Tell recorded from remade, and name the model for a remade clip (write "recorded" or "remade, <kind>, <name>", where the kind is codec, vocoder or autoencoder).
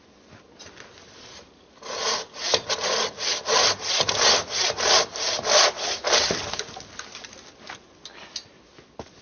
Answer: recorded